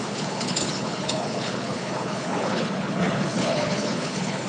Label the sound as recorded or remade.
remade